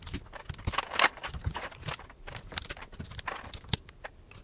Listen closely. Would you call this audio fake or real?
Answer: real